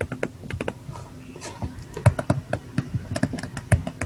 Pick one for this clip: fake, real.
real